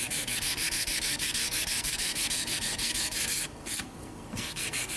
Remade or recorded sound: remade